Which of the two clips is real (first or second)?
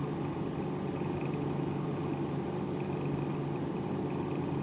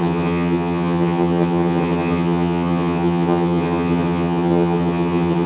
first